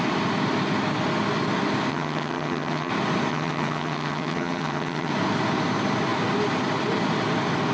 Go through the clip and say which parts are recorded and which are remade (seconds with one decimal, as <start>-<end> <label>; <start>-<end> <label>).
0.0-1.9 recorded; 1.9-2.9 remade; 2.9-3.3 recorded; 3.3-5.1 remade; 5.1-7.7 recorded